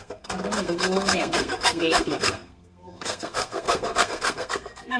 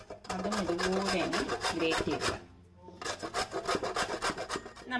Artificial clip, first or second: first